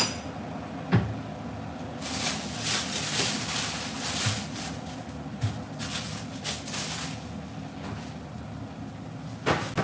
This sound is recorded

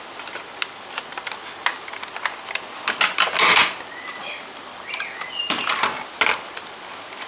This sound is recorded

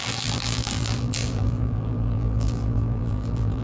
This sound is remade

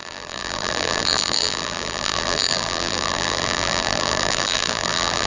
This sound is remade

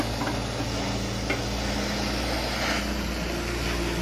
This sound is recorded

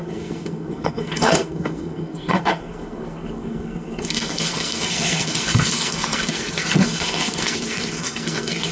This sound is remade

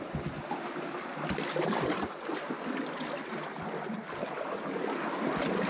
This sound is recorded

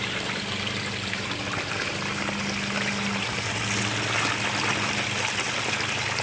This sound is recorded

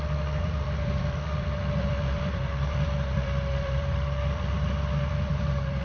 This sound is remade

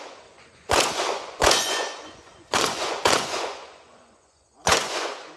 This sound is remade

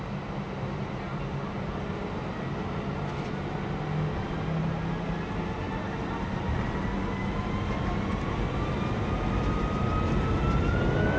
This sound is recorded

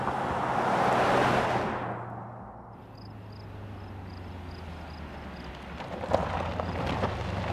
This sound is recorded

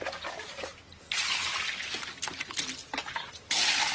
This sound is recorded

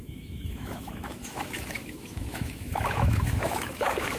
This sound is remade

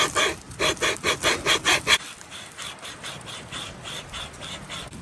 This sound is recorded